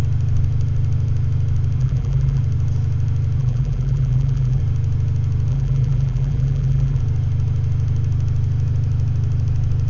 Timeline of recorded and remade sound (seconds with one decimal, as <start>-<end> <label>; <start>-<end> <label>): 0.0-1.8 recorded; 1.8-2.4 remade; 2.4-3.4 recorded; 3.4-4.6 remade; 4.6-5.5 recorded; 5.5-7.0 remade; 7.0-9.9 recorded